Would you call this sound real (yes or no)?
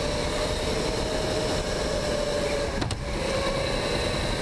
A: yes